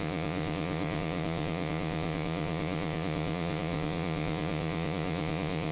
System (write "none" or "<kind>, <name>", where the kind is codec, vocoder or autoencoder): vocoder, Vocos